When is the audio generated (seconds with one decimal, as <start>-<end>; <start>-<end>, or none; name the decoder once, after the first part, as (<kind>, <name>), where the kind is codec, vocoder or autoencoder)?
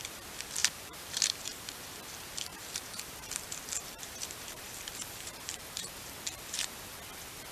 0.6-1.8 (vocoder, BigVGAN v2); 2.5-6.9